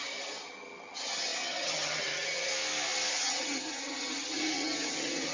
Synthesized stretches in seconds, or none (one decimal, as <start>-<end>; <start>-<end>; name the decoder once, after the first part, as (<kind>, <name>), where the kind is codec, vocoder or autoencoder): 0.0-2.5 (vocoder, HiFi-GAN); 3.1-5.3